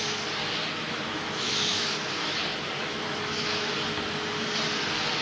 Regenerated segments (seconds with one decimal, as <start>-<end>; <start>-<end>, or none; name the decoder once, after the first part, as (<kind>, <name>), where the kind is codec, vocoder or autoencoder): 0.7-2.4 (autoencoder, DAC-VAE); 2.8-3.7